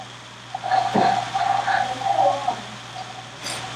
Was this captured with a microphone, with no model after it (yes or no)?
yes